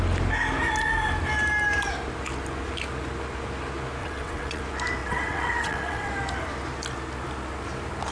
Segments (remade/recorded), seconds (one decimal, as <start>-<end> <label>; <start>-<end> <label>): 0.0-4.0 recorded; 4.0-4.6 remade; 4.6-5.0 recorded; 5.0-6.1 remade; 6.1-8.1 recorded